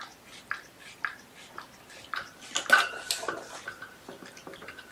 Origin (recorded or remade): recorded